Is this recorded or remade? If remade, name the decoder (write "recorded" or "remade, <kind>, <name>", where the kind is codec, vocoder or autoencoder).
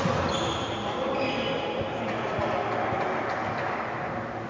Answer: recorded